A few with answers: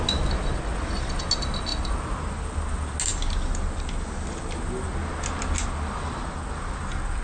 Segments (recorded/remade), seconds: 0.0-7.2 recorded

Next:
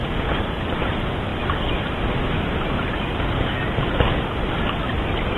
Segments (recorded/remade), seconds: 0.0-5.4 recorded

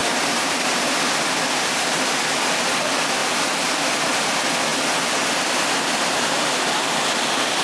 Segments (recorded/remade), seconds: 0.0-7.6 recorded

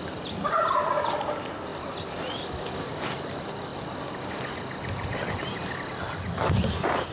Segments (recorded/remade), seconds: 0.0-7.1 recorded